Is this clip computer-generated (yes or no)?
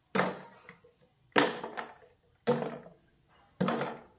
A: no